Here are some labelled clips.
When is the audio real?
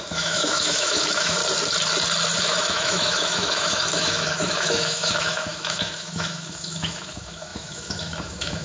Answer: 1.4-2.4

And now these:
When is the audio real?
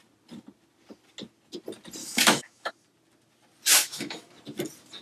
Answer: 0.0-2.0; 2.7-3.8; 4.3-5.0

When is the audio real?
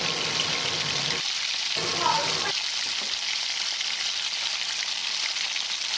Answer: 0.0-6.0